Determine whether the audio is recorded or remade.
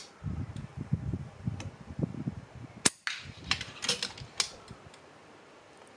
recorded